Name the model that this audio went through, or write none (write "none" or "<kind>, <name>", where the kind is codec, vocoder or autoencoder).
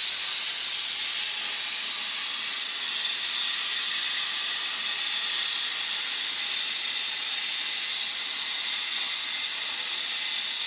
none